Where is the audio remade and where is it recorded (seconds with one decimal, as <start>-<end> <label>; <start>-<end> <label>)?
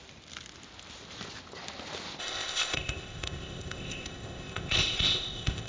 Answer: 0.0-2.2 recorded; 2.2-5.7 remade